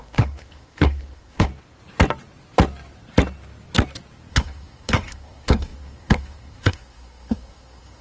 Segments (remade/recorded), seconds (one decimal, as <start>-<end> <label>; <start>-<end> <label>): 0.0-1.5 remade; 1.5-4.3 recorded; 4.3-8.0 remade